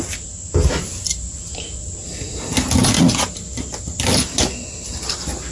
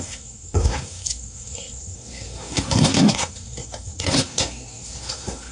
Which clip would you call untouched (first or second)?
first